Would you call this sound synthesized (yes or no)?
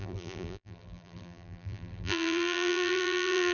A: yes